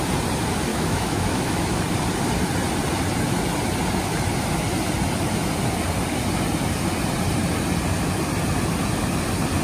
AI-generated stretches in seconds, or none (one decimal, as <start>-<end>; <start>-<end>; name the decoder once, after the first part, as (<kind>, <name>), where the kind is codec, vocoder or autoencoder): 0.7-1.8 (autoencoder, DAC-VAE)